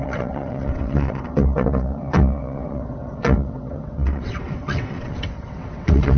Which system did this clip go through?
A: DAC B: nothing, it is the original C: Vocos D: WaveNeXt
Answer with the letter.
D